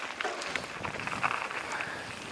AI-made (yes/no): no